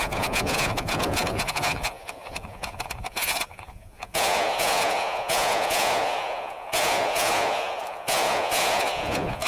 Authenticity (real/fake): fake